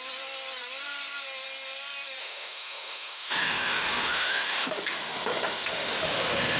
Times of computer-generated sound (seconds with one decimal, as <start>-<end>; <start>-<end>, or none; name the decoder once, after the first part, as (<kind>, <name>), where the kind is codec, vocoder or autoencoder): 2.2-6.6 (autoencoder, DAC-VAE)